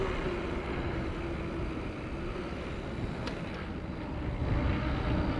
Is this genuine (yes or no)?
yes